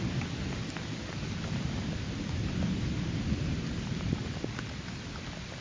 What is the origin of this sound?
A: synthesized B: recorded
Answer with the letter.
B